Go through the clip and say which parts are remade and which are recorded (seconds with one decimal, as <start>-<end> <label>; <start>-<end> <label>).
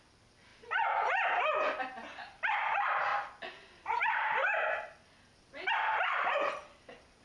0.0-7.2 recorded